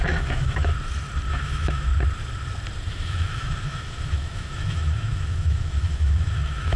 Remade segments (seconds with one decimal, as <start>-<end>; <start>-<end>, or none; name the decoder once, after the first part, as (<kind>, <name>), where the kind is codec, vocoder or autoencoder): 0.0-0.7 (autoencoder, DAC-VAE); 1.3-1.9; 2.9-6.8